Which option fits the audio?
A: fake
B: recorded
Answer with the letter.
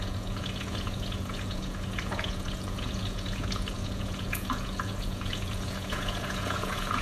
A